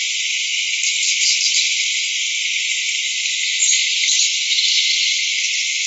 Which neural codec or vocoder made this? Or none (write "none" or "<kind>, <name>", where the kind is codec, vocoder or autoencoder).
vocoder, BigVGAN v2